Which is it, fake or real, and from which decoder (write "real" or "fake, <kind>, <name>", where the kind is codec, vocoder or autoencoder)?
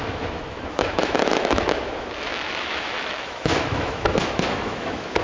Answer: fake, autoencoder, DAC-VAE